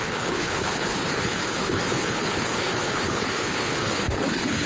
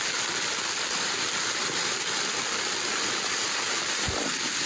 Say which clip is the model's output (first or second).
first